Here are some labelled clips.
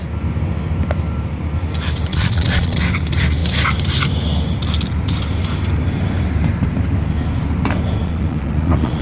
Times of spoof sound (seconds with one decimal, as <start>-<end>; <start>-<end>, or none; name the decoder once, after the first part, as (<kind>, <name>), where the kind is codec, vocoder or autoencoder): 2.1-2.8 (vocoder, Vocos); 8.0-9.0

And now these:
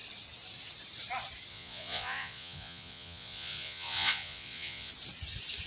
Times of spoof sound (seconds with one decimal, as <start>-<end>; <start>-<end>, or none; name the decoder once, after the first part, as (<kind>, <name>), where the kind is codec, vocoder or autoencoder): 1.5-4.9 (vocoder, Vocos)

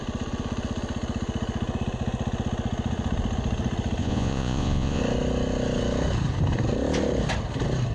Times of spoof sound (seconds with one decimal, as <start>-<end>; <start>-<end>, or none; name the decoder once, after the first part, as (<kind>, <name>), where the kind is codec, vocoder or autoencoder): 4.0-5.0 (vocoder, Vocos)